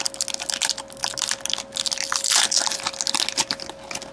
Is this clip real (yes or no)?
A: yes